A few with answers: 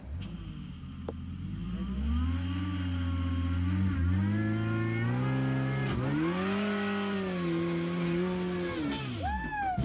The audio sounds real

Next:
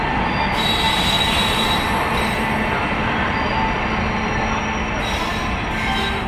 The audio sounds real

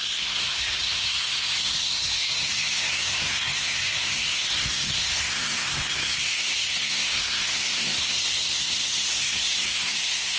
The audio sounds fake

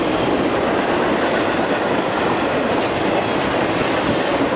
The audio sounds real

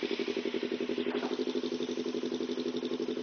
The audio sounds real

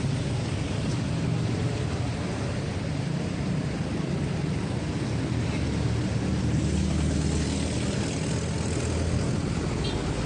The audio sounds real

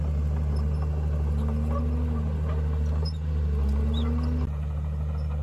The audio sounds real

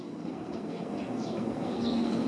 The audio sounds fake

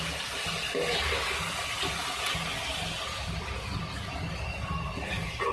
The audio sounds real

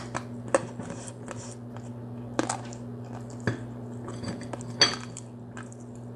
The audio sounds real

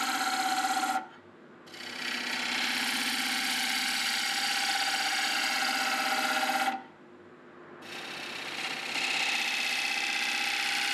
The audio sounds real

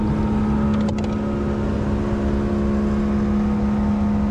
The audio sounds real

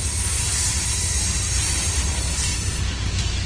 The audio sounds real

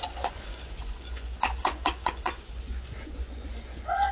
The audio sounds fake